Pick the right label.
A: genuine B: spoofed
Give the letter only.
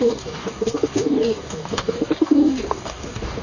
B